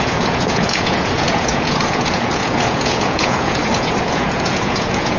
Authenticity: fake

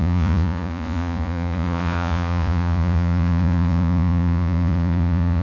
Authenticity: fake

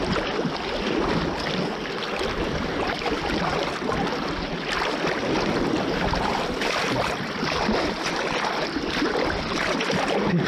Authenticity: real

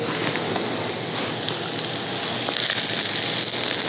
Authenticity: real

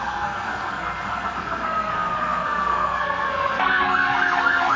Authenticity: fake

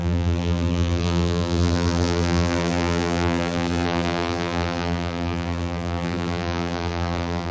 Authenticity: fake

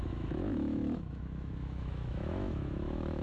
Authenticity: fake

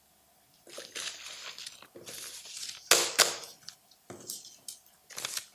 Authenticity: real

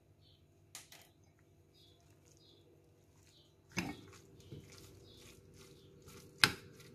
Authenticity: real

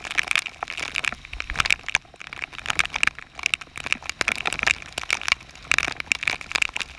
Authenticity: real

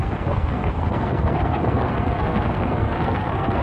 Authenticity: fake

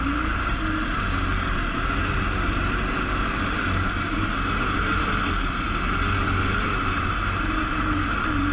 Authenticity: real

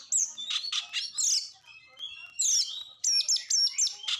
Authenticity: real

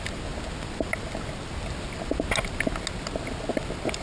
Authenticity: real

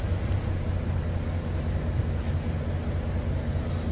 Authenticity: real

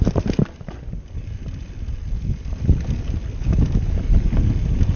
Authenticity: real